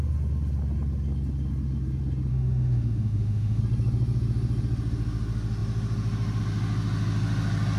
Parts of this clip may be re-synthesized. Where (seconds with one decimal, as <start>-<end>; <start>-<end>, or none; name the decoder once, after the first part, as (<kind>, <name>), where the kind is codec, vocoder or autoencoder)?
2.3-3.6 (autoencoder, DAC-VAE)